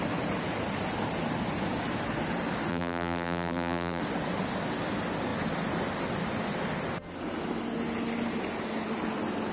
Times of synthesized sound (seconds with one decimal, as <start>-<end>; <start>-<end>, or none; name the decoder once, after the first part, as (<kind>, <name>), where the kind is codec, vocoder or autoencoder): 2.7-4.0 (vocoder, BigVGAN v2)